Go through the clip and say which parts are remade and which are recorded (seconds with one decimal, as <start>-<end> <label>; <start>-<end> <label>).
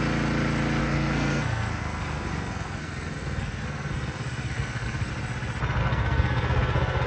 0.0-0.8 recorded; 0.8-5.1 remade; 5.1-5.8 recorded; 5.8-7.1 remade